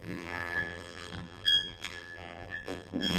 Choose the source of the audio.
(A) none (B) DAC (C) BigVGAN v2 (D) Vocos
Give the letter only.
C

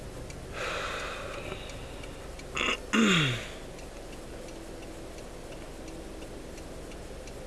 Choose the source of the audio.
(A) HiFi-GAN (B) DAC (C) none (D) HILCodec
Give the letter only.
C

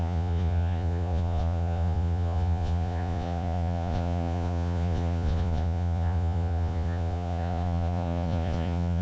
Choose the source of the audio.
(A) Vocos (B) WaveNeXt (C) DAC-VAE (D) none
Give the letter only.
A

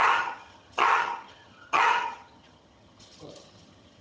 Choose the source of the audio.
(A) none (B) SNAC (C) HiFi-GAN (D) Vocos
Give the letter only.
C